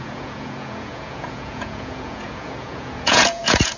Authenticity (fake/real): fake